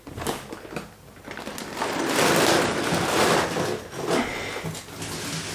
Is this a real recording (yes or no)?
yes